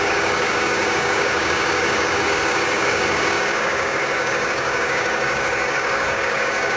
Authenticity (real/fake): fake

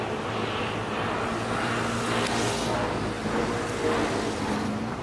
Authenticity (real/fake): real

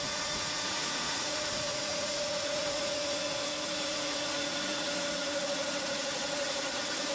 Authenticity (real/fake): fake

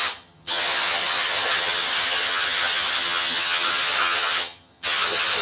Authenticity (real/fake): fake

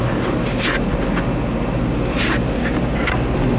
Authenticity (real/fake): real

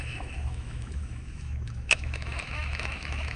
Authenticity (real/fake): fake